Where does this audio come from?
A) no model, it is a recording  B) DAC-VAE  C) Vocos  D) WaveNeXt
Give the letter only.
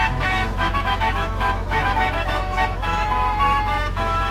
B